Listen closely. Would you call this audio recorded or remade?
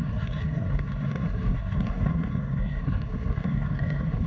remade